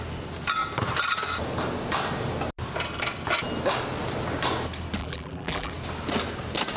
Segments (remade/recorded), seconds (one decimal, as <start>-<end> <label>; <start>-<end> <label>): 0.0-5.0 recorded; 5.0-5.7 remade; 5.7-6.8 recorded